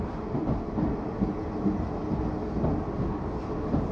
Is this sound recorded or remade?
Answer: recorded